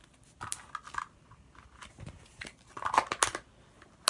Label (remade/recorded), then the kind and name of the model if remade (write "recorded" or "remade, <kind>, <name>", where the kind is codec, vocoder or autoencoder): recorded